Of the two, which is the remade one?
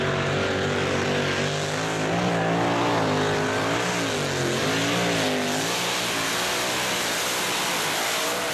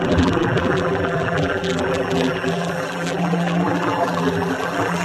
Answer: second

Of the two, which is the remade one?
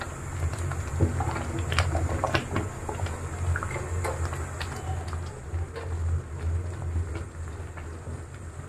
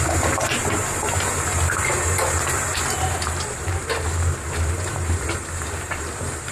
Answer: second